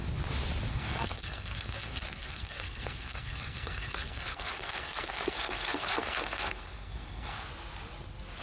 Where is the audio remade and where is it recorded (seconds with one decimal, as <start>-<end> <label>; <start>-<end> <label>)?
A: 0.0-0.7 recorded; 0.7-7.5 remade; 7.5-8.4 recorded